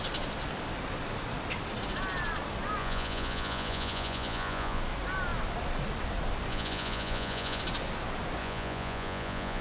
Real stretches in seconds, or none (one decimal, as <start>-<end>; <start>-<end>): 0.0-2.8; 4.8-6.5; 7.6-8.4